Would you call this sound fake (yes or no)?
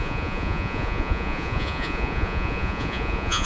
yes